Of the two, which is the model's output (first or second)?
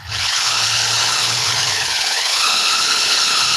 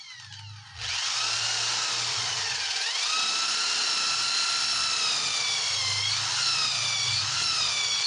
first